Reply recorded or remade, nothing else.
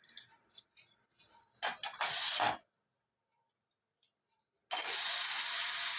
recorded